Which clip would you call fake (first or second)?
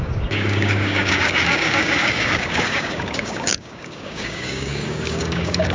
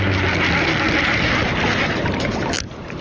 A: first